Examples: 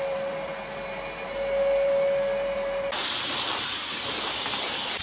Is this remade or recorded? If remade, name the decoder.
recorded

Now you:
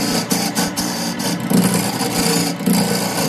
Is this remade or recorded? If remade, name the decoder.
remade, vocoder, BigVGAN v2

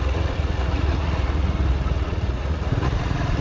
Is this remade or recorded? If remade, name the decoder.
remade, vocoder, Vocos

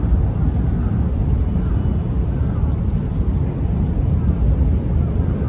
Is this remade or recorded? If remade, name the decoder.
recorded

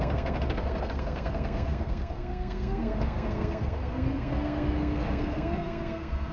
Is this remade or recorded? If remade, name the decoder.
remade, codec, SNAC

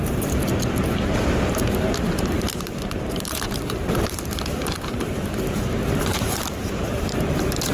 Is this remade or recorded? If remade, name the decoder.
remade, vocoder, BigVGAN v2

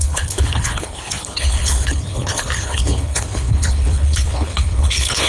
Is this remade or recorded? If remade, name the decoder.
remade, codec, HILCodec